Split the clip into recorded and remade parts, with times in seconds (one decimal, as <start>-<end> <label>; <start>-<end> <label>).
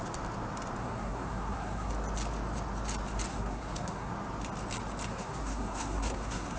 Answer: 0.0-0.8 recorded; 0.8-1.9 remade; 1.9-3.3 recorded; 3.3-4.1 remade; 4.1-5.1 recorded; 5.1-6.6 remade